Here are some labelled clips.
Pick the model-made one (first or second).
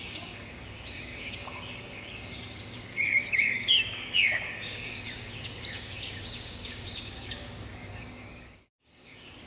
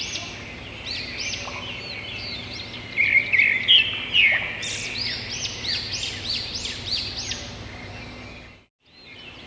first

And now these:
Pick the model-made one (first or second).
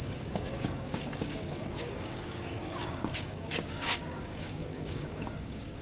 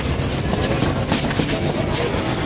first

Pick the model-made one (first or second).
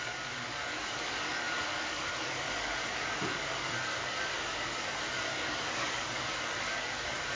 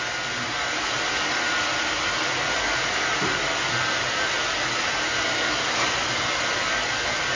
first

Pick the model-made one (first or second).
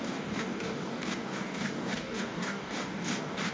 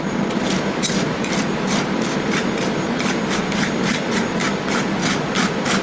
first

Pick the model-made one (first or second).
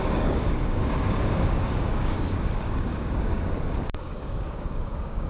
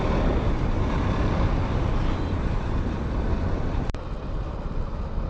first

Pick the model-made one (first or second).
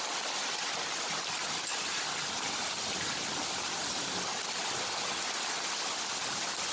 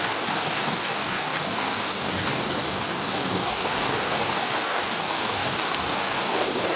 second